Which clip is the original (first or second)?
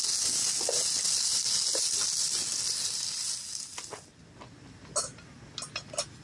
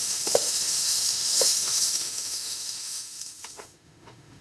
first